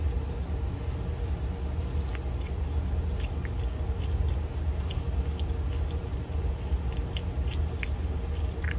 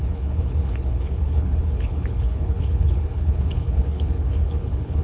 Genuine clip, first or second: first